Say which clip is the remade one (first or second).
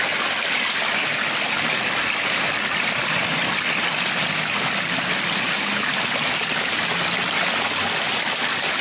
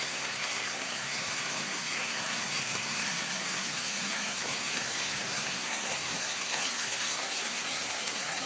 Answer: second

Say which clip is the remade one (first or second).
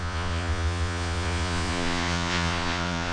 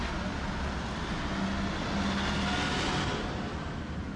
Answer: first